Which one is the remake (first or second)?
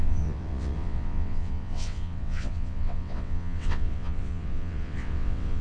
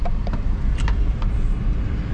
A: first